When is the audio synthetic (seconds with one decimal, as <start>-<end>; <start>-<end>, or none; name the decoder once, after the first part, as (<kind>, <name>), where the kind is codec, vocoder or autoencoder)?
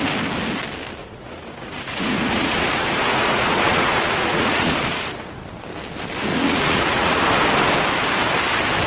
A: 1.0-5.4 (vocoder, Vocos); 6.3-7.2